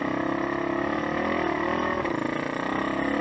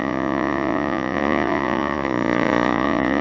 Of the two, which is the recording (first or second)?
first